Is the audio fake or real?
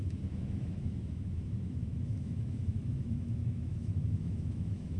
fake